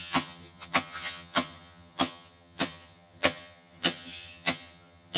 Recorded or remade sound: remade